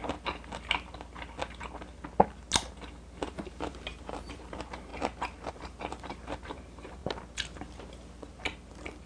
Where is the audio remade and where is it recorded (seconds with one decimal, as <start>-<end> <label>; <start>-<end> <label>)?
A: 0.0-3.2 recorded; 3.2-4.9 remade; 4.9-5.5 recorded; 5.5-7.0 remade; 7.0-8.7 recorded; 8.7-9.1 remade